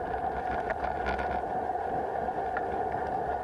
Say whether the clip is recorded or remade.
recorded